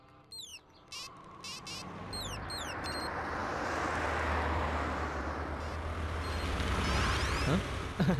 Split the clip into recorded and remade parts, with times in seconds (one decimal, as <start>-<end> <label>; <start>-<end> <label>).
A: 0.0-8.2 recorded